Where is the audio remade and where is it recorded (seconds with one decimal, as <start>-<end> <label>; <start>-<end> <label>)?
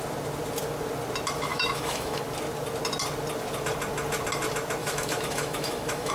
0.0-1.5 recorded; 1.5-2.2 remade; 2.2-4.8 recorded; 4.8-6.1 remade